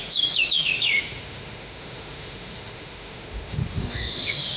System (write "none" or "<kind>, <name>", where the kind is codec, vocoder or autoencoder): autoencoder, DAC-VAE